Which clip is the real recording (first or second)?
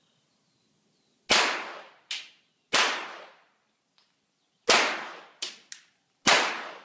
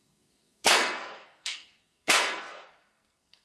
first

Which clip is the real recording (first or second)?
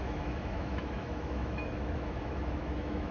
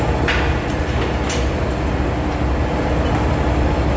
second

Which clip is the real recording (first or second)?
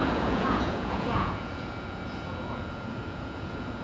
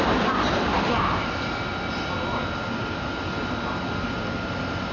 second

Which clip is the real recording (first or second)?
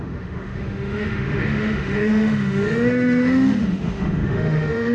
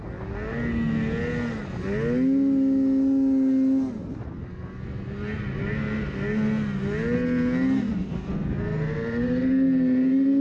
second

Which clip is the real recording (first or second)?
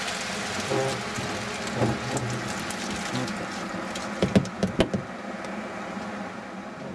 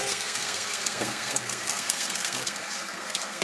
first